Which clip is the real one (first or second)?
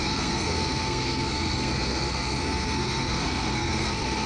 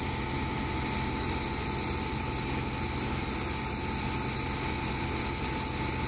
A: second